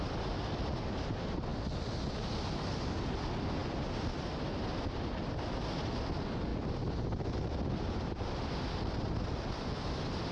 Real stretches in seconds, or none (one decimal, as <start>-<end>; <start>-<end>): 0.0-6.5; 8.5-10.3